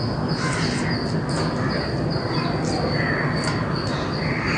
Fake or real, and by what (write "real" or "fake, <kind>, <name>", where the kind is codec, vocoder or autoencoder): real